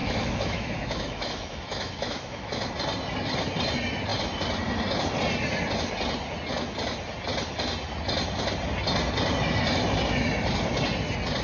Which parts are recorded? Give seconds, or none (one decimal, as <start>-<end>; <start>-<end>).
2.7-11.4